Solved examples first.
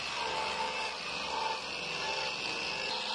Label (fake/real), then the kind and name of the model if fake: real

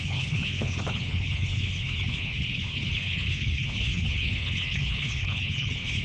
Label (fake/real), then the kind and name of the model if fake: fake, codec, HILCodec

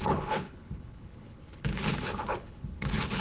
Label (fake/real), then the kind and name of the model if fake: fake, codec, HILCodec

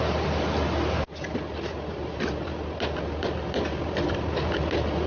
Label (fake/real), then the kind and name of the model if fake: real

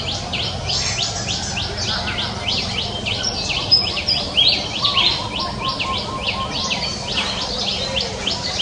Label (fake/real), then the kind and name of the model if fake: real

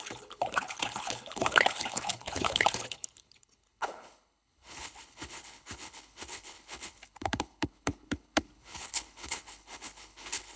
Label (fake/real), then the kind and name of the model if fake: fake, codec, HILCodec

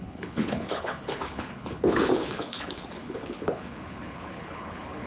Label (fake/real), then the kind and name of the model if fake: fake, codec, HILCodec